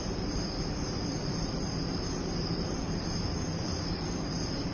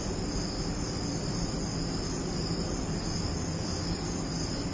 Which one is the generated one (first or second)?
first